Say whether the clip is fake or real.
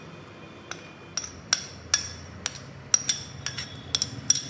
real